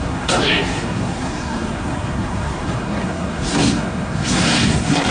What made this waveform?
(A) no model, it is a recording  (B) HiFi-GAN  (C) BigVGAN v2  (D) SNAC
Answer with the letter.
D